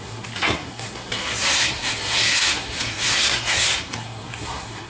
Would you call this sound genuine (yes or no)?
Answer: no